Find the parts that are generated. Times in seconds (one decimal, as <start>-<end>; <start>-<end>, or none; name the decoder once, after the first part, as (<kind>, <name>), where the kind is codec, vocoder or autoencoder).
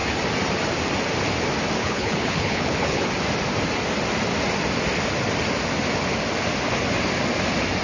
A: 1.8-3.1 (codec, HILCodec)